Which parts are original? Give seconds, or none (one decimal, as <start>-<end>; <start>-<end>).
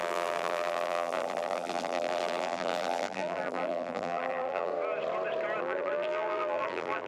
4.7-5.6